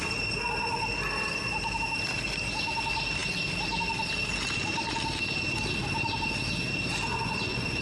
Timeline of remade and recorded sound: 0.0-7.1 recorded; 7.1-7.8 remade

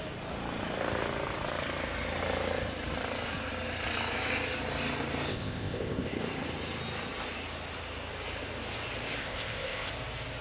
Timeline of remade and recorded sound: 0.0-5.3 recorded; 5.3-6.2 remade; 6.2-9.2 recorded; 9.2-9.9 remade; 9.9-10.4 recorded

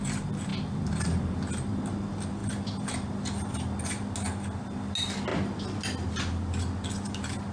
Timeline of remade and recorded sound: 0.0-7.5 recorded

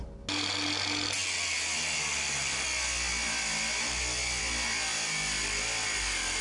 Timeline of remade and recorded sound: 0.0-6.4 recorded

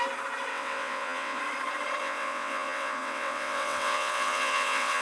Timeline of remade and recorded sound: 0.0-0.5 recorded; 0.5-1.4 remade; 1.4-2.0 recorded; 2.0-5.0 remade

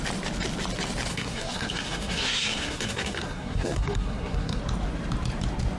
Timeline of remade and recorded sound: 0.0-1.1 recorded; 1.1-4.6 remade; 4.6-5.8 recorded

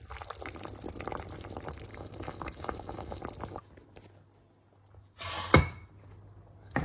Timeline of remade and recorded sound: 0.0-1.9 recorded; 1.9-3.2 remade; 3.2-6.8 recorded

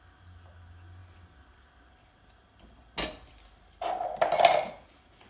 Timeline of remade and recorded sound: 0.0-5.3 recorded